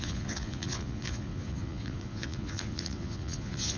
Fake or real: fake